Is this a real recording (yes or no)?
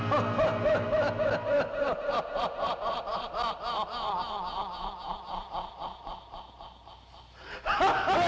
yes